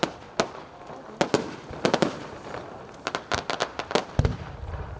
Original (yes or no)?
yes